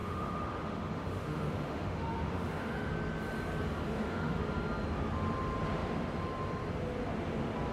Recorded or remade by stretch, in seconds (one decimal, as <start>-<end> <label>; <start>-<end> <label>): 0.0-2.9 remade; 2.9-3.8 recorded; 3.8-4.4 remade; 4.4-7.7 recorded

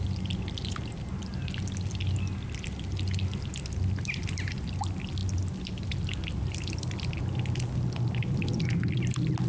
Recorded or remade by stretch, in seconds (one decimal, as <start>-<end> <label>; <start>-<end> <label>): 0.0-9.5 recorded

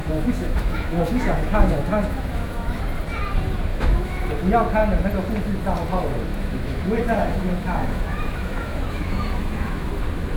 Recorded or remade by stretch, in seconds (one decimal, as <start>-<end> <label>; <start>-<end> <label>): 0.0-2.8 remade; 2.8-3.7 recorded; 3.7-4.3 remade; 4.3-6.3 recorded; 6.3-9.9 remade; 9.9-10.4 recorded